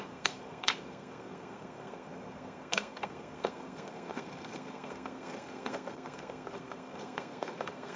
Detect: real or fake fake